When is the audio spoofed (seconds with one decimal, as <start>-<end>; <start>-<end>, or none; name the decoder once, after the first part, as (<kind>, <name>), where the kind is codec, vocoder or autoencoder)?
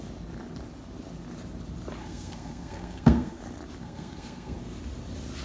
2.0-3.4 (codec, SNAC); 3.8-4.6